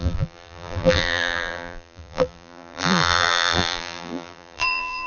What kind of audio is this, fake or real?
fake